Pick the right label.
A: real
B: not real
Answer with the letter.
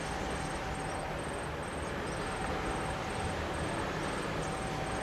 A